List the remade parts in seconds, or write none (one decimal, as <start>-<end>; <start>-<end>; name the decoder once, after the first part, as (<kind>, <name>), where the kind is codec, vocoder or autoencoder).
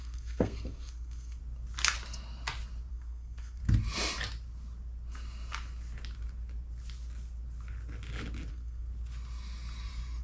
0.0-1.4 (codec, SNAC); 2.9-3.6; 8.5-8.9